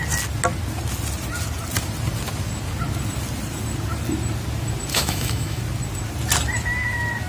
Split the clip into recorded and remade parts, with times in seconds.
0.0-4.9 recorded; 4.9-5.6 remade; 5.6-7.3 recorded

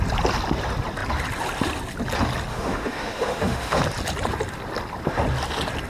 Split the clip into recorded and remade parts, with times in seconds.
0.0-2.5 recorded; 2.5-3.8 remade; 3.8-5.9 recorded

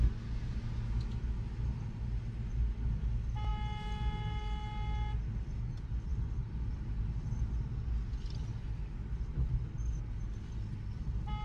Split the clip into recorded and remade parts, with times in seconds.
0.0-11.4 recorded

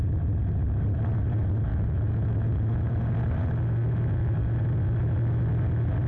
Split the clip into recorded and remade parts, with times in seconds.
0.0-1.7 recorded; 1.7-2.9 remade; 2.9-6.1 recorded

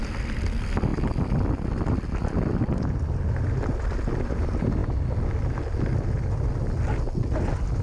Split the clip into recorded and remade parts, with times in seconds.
0.0-7.8 recorded

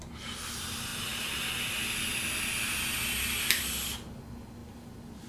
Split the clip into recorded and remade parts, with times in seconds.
0.0-5.3 recorded

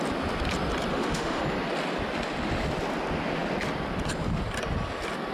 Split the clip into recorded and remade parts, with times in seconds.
0.0-0.9 recorded; 0.9-1.4 remade; 1.4-5.3 recorded